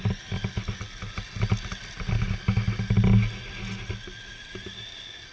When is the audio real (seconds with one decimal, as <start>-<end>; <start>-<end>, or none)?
0.0-5.3